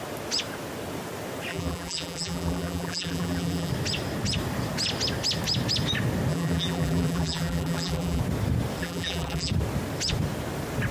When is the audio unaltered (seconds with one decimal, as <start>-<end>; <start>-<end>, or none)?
0.0-1.5; 3.7-6.3; 8.2-8.8; 9.5-10.9